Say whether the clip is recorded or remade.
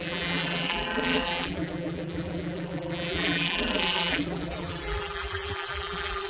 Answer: remade